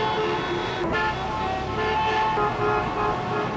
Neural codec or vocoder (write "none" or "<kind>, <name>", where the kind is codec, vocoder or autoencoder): none